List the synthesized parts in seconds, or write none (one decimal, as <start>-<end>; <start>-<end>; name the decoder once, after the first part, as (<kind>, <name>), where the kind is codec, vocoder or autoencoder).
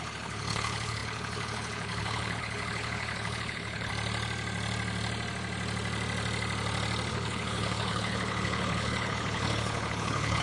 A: 0.0-3.9 (codec, HILCodec); 7.1-10.4